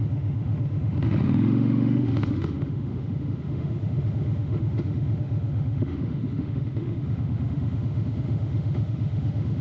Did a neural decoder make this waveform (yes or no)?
yes